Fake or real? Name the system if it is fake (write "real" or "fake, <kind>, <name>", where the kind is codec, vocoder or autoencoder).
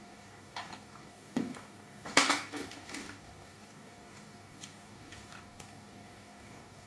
fake, codec, DAC